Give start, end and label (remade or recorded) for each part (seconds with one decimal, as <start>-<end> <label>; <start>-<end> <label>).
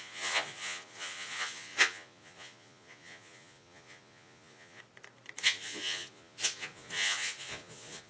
0.0-4.8 remade; 4.8-5.4 recorded; 5.4-8.1 remade